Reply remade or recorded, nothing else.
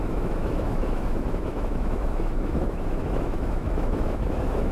remade